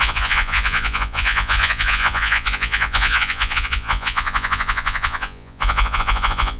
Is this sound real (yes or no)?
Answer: no